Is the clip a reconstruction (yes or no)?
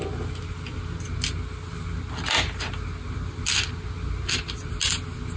no